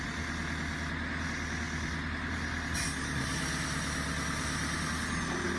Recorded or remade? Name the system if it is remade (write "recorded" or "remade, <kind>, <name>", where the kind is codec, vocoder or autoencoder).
recorded